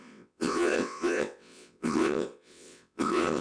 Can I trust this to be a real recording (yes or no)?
no